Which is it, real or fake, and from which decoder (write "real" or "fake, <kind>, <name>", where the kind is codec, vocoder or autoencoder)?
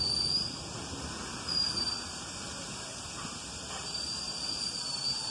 real